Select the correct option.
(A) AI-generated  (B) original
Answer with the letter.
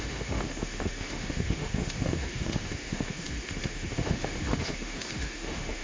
A